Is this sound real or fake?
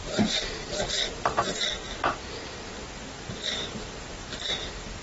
fake